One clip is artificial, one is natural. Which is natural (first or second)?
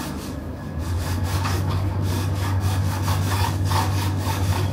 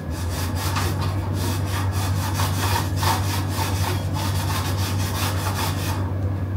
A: second